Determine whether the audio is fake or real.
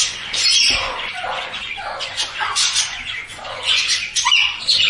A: fake